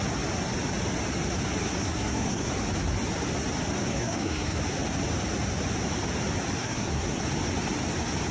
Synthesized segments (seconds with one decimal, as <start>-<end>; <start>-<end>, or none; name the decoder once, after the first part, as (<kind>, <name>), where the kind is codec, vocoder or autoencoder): 1.8-2.5 (codec, SNAC); 3.9-4.6; 6.6-7.2